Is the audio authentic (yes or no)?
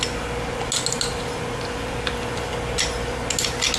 yes